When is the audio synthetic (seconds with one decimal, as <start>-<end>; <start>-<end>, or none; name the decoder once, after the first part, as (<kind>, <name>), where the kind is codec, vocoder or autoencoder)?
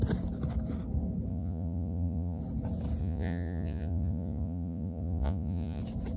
1.3-2.4 (vocoder, Vocos); 3.0-5.8